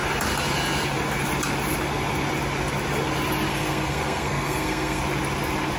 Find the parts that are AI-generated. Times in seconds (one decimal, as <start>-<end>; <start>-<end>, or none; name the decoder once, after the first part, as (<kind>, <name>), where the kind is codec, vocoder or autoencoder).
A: 3.5-5.0 (codec, SNAC)